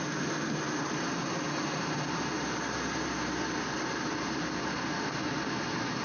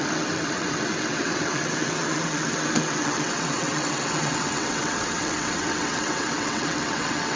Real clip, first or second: first